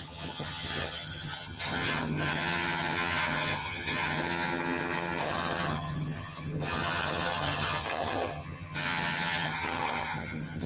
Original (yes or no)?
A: no